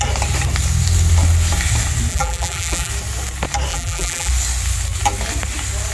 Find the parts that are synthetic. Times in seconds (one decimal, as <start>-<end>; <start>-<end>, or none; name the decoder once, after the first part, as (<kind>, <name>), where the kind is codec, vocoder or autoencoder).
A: 2.1-2.9 (vocoder, BigVGAN v2); 3.7-4.3